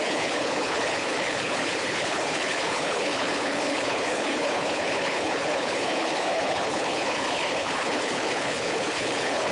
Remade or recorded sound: remade